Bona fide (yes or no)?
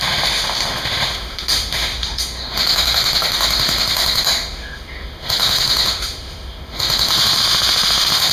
no